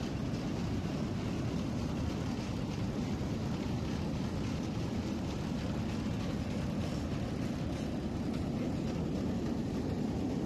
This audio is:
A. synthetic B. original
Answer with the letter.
B